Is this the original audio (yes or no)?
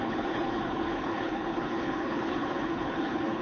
no